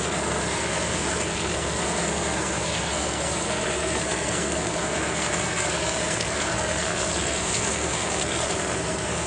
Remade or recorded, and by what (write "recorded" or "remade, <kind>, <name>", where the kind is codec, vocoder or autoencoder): remade, codec, SNAC